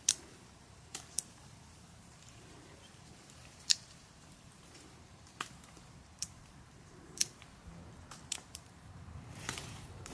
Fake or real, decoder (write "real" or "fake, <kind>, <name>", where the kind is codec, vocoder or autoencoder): fake, vocoder, BigVGAN v2